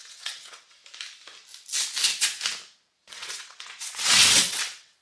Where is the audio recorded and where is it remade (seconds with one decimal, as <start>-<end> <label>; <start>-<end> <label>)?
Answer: 0.0-0.8 remade; 0.8-3.1 recorded; 3.1-5.0 remade